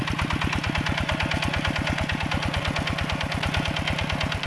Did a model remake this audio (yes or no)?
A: no